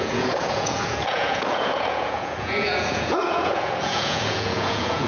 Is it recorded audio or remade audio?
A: remade